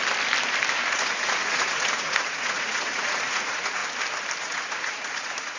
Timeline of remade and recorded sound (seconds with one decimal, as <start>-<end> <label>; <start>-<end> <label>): 0.0-0.7 recorded; 0.7-3.8 remade; 3.8-4.4 recorded; 4.4-5.6 remade